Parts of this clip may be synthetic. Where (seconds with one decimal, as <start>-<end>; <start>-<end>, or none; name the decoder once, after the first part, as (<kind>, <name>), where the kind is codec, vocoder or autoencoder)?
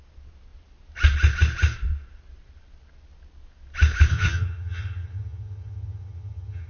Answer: 4.1-6.7 (vocoder, HiFi-GAN)